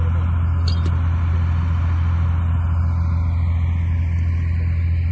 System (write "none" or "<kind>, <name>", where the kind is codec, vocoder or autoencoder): none